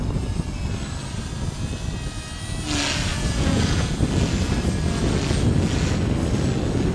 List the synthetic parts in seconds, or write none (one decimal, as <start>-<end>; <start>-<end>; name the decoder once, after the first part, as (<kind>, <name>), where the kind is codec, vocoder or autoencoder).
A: 3.1-4.0 (vocoder, Vocos)